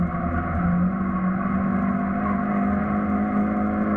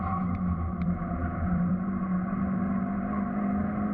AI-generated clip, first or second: second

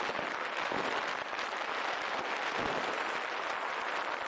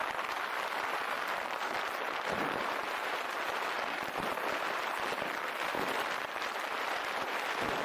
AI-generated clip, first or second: second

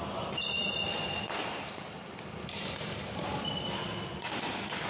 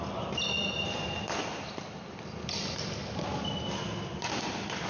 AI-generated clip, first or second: first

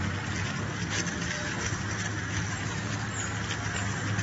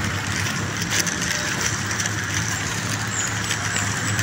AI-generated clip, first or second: second